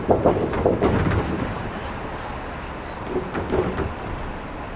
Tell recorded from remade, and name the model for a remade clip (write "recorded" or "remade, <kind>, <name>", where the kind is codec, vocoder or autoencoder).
recorded